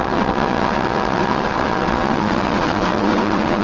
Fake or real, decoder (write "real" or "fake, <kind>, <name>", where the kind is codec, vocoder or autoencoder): fake, vocoder, WaveNeXt